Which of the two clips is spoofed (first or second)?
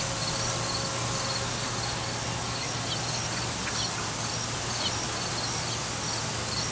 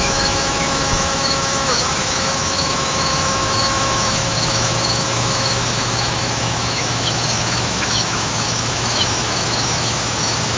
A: second